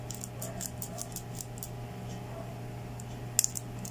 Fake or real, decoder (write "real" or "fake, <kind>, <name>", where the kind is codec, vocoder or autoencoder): real